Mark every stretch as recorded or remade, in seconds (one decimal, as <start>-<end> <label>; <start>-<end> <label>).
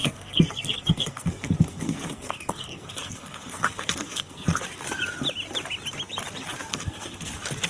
0.0-4.6 remade; 4.6-6.7 recorded; 6.7-7.3 remade; 7.3-7.7 recorded